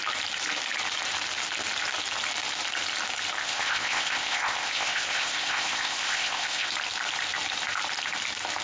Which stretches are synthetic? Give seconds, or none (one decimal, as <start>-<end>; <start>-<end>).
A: 3.4-6.7